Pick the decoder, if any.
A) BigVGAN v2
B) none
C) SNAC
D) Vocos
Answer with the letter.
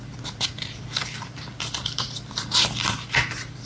A